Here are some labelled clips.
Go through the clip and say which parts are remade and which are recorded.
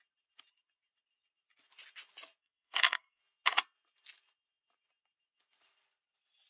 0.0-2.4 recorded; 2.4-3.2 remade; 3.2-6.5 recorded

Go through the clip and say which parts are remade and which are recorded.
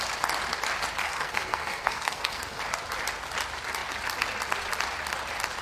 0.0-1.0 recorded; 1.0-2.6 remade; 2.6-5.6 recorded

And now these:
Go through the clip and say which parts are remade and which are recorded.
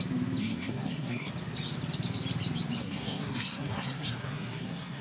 0.0-0.4 recorded; 0.4-1.3 remade; 1.3-2.8 recorded; 2.8-5.0 remade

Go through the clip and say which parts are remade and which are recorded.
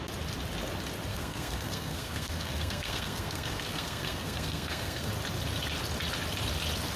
0.0-1.1 recorded; 1.1-5.1 remade; 5.1-7.0 recorded